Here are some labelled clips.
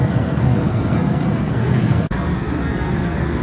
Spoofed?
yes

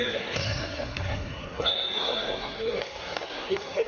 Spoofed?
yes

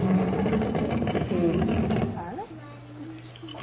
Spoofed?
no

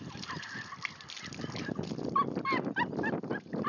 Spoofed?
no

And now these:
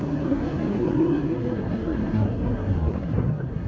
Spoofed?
yes